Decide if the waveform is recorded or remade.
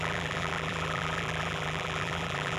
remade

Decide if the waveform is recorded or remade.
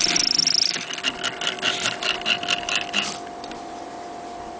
recorded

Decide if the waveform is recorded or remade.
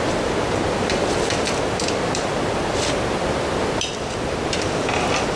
remade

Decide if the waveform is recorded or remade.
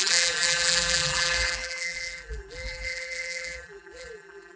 remade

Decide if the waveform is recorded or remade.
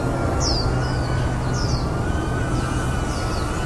recorded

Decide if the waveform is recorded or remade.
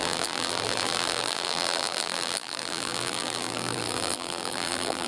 remade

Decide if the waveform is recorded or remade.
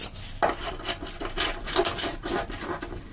remade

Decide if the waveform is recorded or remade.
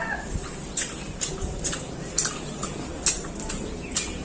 remade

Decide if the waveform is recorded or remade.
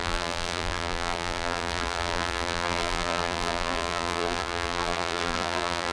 remade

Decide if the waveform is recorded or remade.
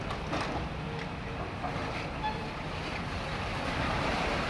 remade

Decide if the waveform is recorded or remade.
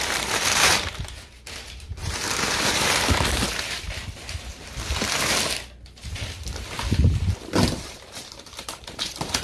remade